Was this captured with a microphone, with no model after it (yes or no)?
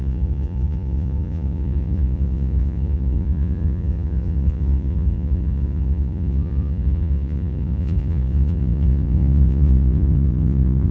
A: no